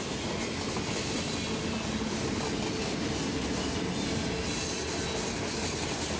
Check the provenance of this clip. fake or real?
real